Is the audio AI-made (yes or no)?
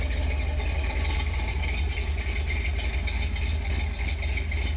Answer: no